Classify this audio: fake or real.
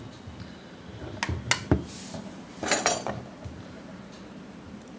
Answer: real